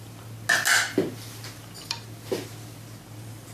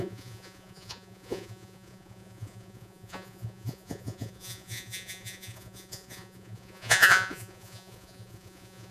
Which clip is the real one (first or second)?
first